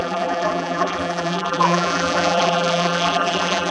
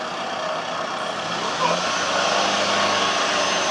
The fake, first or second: first